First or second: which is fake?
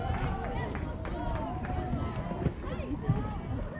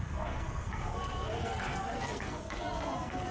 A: second